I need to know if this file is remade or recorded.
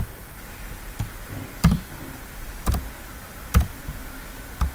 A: recorded